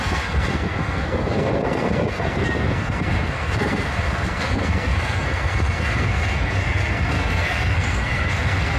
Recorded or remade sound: remade